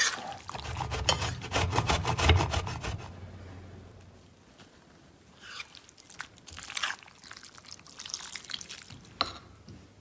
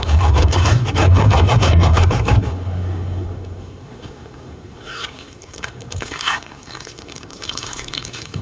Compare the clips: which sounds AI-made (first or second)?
second